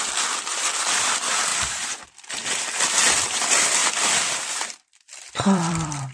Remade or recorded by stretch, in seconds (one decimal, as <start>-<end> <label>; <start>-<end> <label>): 0.0-1.5 remade; 1.5-2.0 recorded; 2.0-3.8 remade; 3.8-4.5 recorded; 4.5-6.1 remade